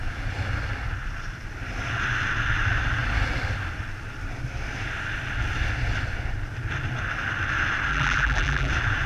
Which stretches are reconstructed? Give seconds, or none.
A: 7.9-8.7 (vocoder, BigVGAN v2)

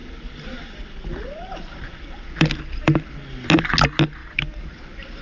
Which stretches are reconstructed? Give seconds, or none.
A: 4.2-5.2 (vocoder, BigVGAN v2)

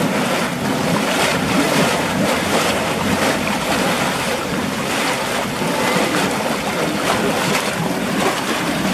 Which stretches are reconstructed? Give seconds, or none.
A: 1.3-4.6 (vocoder, BigVGAN v2)

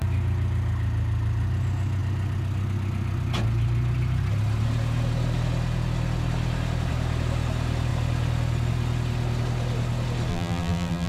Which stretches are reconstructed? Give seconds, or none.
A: 10.3-11.1 (vocoder, BigVGAN v2)

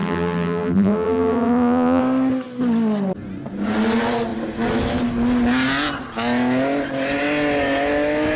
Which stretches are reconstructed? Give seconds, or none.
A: 0.0-2.0 (vocoder, BigVGAN v2)

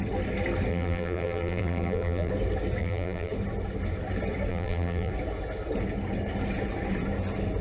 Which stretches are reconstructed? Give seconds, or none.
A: 0.7-2.3 (vocoder, BigVGAN v2); 2.8-3.3; 4.5-5.1

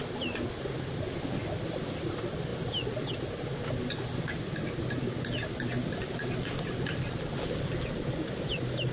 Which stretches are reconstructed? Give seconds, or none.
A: none

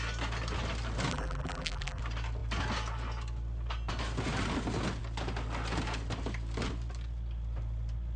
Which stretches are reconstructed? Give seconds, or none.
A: 1.1-2.0 (vocoder, BigVGAN v2)